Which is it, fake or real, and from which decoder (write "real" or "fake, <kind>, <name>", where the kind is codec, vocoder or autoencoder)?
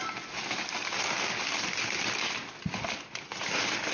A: real